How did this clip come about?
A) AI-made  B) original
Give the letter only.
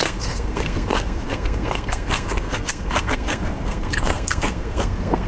A